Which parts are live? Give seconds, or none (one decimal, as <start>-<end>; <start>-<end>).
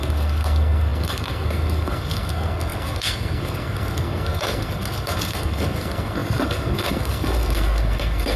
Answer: none